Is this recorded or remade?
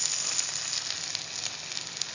recorded